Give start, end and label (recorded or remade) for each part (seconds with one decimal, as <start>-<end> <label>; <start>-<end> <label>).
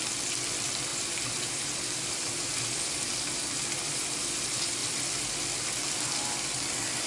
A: 0.0-7.1 remade